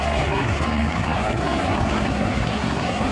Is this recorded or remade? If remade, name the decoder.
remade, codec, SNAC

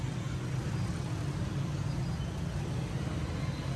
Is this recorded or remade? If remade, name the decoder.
recorded